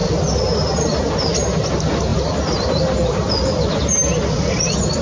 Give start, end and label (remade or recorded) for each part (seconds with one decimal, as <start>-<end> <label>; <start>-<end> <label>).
0.0-5.0 recorded